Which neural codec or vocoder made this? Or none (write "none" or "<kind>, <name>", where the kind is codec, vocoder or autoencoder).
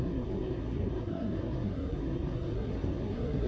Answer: codec, SNAC